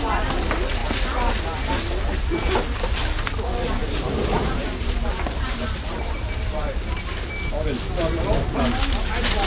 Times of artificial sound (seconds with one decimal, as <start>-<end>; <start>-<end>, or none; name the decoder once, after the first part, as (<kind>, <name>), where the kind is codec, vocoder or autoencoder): 3.8-7.3 (vocoder, BigVGAN v2)